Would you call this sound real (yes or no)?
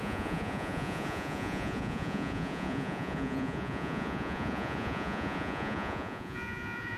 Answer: no